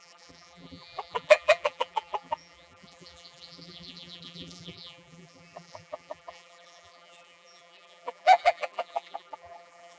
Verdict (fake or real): fake